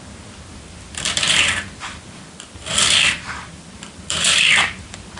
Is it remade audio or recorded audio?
remade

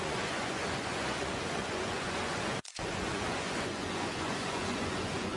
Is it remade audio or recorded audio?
remade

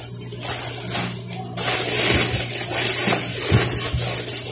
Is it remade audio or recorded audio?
recorded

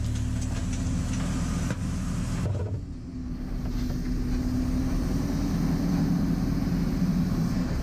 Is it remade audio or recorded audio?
recorded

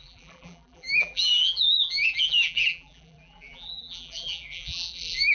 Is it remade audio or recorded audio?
remade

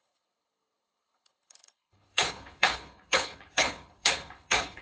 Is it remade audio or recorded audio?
remade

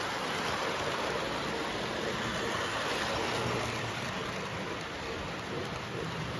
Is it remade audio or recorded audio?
recorded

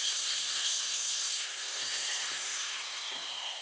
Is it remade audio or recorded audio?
remade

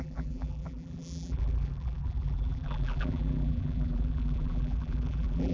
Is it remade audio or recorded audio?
remade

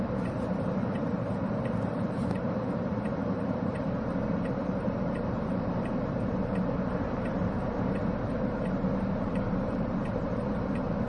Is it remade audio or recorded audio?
remade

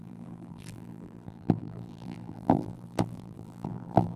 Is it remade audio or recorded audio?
remade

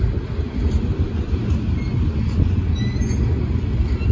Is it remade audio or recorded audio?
recorded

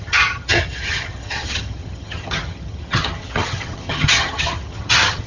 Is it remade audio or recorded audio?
remade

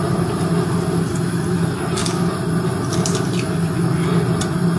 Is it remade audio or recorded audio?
recorded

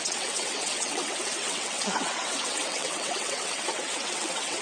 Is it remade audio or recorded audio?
remade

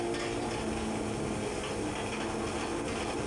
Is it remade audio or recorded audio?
recorded